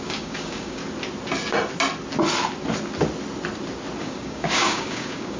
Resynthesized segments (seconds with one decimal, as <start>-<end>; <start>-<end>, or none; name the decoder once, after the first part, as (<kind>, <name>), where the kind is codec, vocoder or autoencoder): 0.0-0.8 (codec, DAC); 4.0-5.4